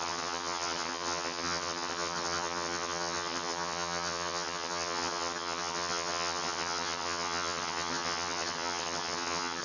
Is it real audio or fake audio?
fake